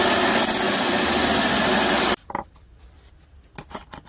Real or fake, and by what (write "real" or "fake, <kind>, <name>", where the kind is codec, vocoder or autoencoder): real